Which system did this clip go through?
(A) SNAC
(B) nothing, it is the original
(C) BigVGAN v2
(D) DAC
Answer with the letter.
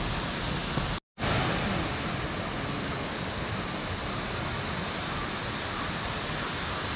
B